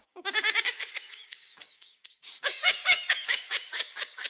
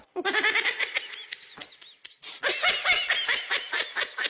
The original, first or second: second